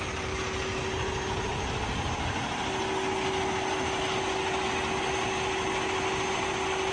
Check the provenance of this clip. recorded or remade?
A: recorded